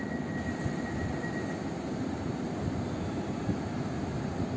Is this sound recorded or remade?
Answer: recorded